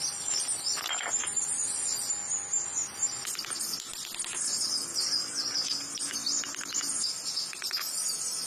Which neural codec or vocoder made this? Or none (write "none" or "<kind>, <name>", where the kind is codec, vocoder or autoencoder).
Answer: none